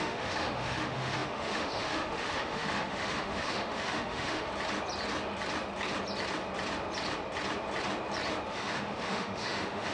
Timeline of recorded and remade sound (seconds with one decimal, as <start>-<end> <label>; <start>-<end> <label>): 0.0-4.5 remade; 4.5-8.5 recorded; 8.5-9.9 remade